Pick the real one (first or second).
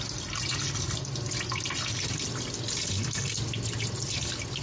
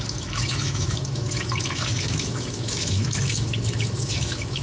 first